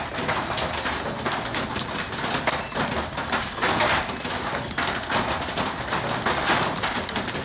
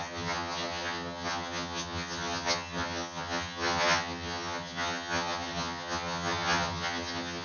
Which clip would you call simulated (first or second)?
second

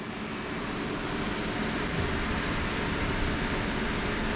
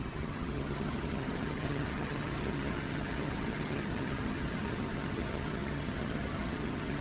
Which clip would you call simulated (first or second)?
second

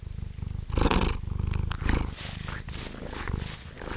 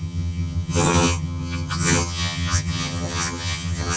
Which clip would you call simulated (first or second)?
second